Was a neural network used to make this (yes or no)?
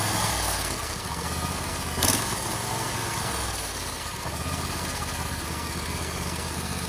yes